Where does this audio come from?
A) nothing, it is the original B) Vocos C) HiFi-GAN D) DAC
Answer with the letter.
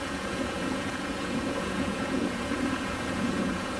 B